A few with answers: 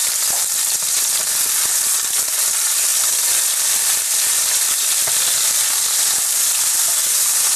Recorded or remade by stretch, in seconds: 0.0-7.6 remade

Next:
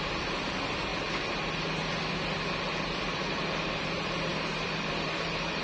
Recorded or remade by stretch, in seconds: 0.0-0.9 remade; 0.9-2.8 recorded; 2.8-5.6 remade

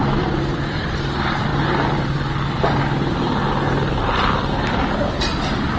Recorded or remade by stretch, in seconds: 0.0-1.5 remade; 1.5-4.0 recorded; 4.0-5.8 remade

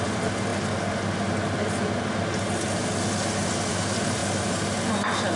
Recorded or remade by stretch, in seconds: 0.0-0.5 remade; 0.5-3.7 recorded; 3.7-4.2 remade; 4.2-5.4 recorded